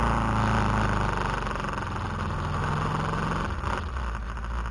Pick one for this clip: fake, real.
real